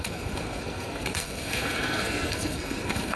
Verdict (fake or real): fake